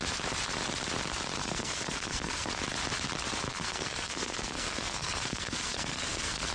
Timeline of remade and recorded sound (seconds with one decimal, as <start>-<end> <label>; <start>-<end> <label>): 0.0-1.4 recorded; 1.4-2.5 remade; 2.5-3.5 recorded; 3.5-6.5 remade